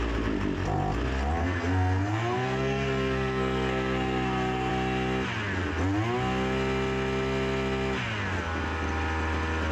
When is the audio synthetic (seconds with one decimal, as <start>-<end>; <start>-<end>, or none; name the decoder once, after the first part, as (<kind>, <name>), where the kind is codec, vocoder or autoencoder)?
1.4-4.7 (codec, SNAC)